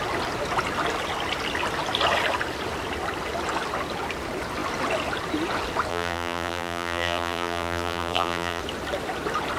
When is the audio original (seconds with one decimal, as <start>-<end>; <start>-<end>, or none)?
0.0-5.9; 8.6-9.6